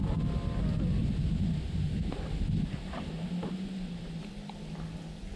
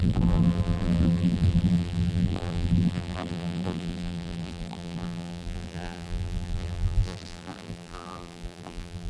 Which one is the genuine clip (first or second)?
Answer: first